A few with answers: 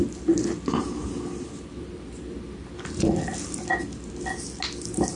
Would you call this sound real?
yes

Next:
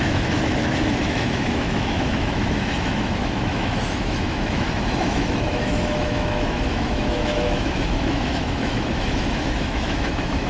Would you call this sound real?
no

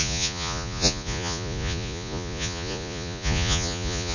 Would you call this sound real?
no